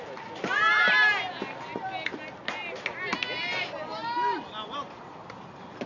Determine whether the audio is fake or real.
real